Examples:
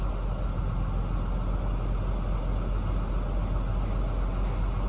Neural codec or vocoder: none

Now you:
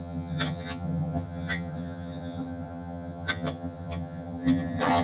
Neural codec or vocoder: vocoder, HiFi-GAN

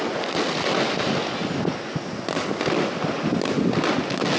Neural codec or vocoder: none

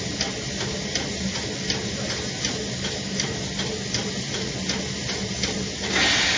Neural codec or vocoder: none